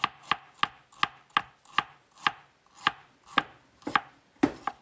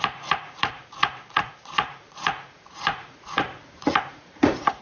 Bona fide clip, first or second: first